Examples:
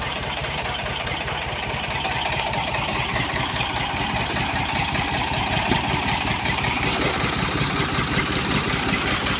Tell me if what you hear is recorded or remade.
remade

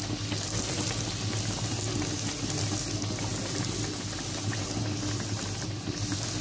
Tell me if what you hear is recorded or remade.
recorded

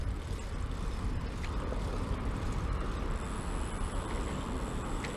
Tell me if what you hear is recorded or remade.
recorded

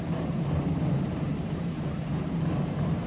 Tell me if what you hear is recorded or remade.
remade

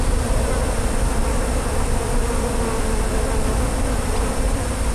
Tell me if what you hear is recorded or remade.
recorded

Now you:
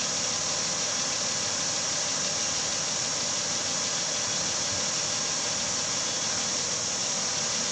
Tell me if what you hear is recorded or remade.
recorded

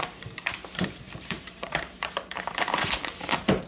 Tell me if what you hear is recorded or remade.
remade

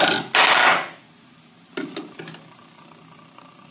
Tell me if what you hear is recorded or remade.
recorded